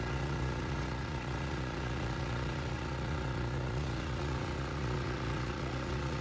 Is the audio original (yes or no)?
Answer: no